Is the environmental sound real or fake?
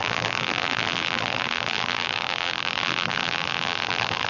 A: fake